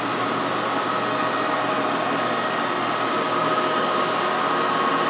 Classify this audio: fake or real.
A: real